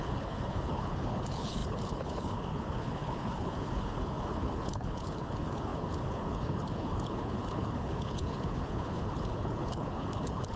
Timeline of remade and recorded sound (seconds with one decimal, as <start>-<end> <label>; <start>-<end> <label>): 0.0-10.6 remade